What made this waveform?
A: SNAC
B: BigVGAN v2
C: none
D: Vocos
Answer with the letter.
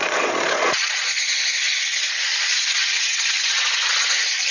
D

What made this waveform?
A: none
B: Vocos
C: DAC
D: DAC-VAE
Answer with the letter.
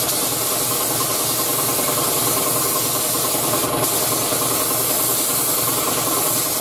A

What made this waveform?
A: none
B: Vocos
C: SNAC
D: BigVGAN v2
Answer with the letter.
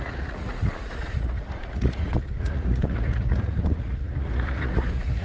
B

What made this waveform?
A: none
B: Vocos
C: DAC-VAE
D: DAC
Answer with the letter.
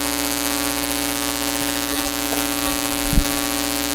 C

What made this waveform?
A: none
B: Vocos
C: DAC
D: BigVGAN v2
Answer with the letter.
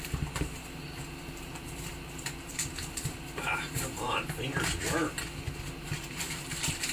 D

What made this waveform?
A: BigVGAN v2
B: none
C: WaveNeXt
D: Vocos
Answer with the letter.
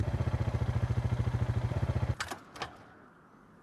B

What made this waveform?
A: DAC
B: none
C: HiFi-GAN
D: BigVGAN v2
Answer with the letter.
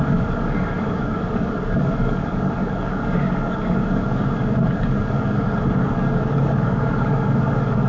A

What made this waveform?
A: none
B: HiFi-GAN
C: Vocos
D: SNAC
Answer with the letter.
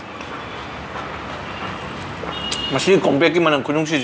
A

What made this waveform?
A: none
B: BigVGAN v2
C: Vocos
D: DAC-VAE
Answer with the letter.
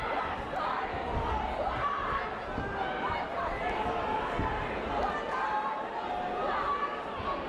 A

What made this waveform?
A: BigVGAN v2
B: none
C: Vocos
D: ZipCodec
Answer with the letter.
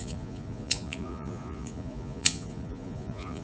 C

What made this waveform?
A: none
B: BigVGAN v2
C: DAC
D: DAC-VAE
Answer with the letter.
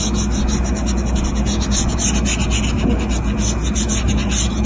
A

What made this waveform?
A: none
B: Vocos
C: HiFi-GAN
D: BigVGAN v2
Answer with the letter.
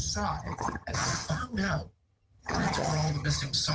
C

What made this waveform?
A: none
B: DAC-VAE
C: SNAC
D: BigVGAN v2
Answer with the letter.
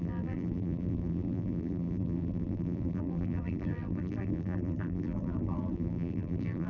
D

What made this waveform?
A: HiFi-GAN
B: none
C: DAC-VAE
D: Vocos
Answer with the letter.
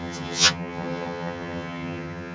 A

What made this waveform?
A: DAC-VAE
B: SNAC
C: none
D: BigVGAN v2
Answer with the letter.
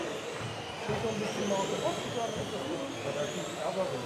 C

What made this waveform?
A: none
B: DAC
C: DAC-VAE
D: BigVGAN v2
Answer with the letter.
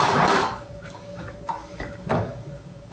B